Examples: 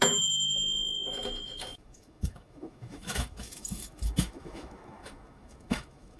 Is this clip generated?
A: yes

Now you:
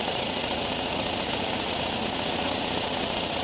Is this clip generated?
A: yes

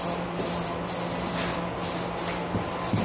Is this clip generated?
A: no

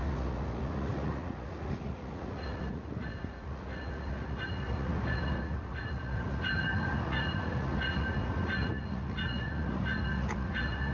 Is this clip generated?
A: yes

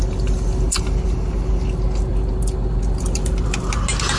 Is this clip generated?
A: no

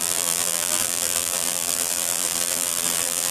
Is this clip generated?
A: yes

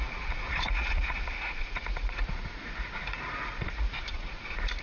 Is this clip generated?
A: yes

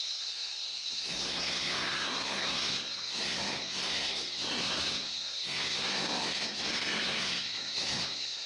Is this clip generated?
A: yes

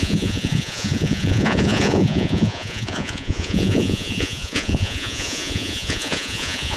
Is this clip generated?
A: yes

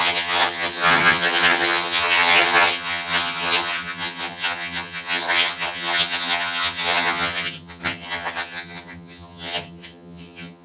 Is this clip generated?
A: yes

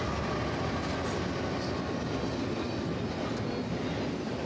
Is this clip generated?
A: no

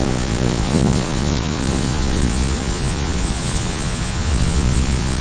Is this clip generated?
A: yes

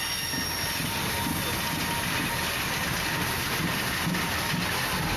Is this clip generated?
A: no